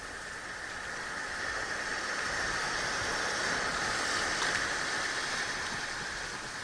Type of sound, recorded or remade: recorded